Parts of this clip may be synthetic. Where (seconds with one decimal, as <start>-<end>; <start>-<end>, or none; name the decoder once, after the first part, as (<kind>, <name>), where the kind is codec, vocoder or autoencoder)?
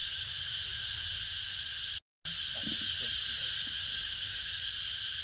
0.0-0.6 (codec, DAC); 3.9-4.6